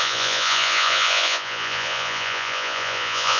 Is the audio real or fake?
fake